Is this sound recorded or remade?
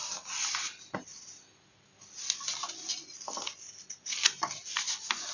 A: recorded